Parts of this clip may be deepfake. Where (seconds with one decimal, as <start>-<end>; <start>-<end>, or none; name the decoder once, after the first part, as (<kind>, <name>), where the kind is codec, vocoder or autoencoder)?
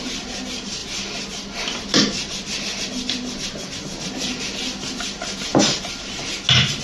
none